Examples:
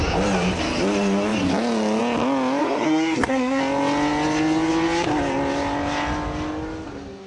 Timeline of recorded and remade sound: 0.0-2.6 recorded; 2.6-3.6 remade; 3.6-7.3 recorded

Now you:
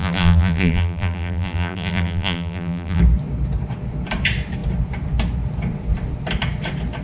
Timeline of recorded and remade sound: 0.0-3.0 remade; 3.0-7.0 recorded